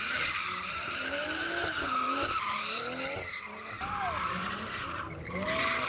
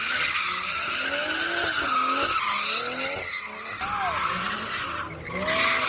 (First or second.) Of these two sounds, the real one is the second